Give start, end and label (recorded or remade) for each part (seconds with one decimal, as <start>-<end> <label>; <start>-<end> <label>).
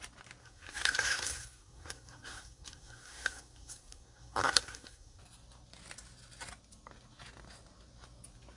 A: 0.0-0.4 recorded; 0.4-5.2 remade; 5.2-8.6 recorded